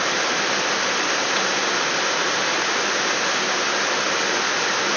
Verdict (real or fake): real